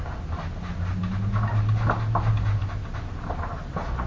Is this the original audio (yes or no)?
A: yes